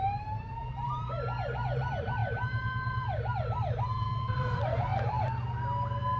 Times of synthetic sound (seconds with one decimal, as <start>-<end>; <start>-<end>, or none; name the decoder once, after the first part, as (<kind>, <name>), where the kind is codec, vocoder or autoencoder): 0.0-4.9 (vocoder, BigVGAN v2)